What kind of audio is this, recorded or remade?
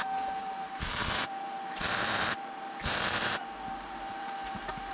remade